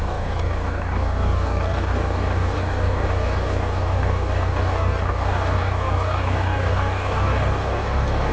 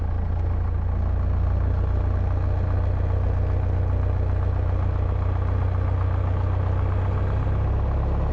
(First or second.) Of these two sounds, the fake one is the first